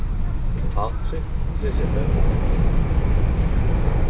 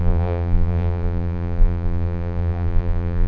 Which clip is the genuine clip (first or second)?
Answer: first